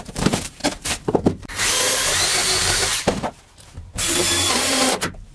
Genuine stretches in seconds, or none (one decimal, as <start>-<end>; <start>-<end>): none